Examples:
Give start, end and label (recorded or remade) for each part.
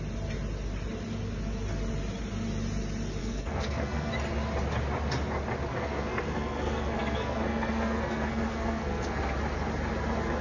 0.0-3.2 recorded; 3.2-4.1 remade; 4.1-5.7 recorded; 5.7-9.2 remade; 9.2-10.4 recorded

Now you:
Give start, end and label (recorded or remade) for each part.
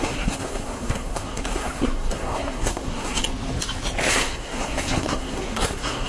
0.0-3.2 remade; 3.2-4.1 recorded; 4.1-6.1 remade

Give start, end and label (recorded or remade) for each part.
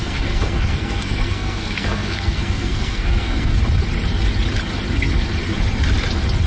0.0-3.6 remade; 3.6-6.5 recorded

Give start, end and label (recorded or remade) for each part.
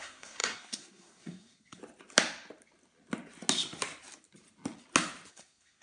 0.0-1.8 remade; 1.8-5.3 recorded; 5.3-5.8 remade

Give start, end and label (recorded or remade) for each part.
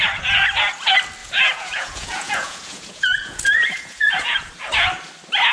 0.0-1.2 recorded; 1.2-4.5 remade; 4.5-5.5 recorded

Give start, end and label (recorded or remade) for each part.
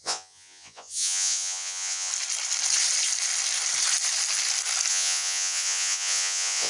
0.0-2.1 remade; 2.1-4.9 recorded; 4.9-6.7 remade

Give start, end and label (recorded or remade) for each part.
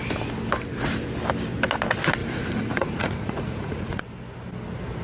0.0-2.2 recorded; 2.2-4.0 remade; 4.0-5.0 recorded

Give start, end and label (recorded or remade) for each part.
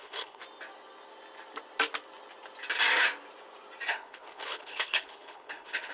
0.0-0.4 remade; 0.4-3.9 recorded; 3.9-5.9 remade